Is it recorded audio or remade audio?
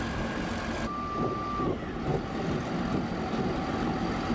recorded